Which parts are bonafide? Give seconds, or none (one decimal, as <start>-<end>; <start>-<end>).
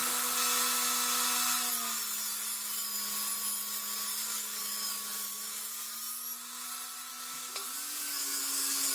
0.0-4.1; 6.0-7.1